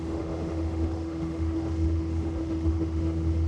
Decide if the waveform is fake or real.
fake